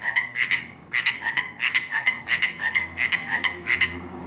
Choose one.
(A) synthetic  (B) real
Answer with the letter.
A